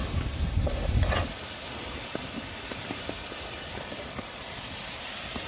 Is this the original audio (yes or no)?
yes